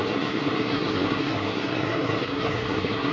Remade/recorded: remade